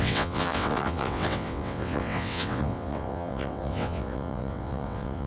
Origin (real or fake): fake